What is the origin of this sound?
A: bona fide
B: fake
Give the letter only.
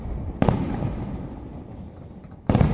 A